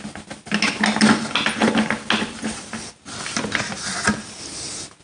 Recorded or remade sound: recorded